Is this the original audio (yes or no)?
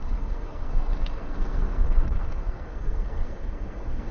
no